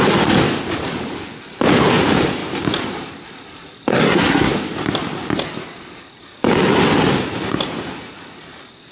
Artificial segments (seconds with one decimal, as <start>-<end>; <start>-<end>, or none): 3.9-4.5